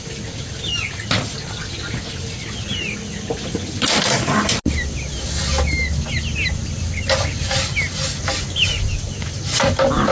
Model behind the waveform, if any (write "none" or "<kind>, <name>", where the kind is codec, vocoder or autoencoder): none